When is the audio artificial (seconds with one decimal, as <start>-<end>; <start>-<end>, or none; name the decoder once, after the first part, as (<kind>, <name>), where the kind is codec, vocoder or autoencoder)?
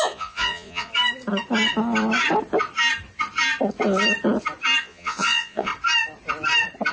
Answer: 0.0-0.9 (vocoder, Vocos); 4.8-5.7